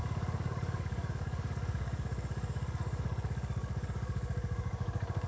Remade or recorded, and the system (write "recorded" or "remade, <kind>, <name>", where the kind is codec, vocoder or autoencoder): remade, codec, DAC